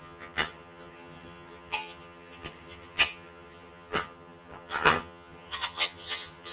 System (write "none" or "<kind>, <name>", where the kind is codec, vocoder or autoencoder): vocoder, HiFi-GAN